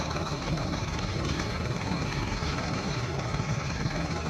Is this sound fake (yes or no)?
yes